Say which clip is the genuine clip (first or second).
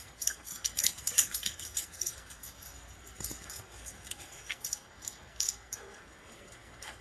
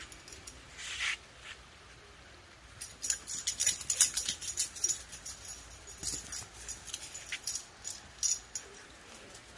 second